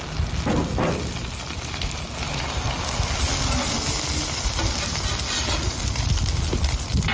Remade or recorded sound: recorded